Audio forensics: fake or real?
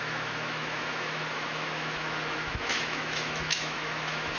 fake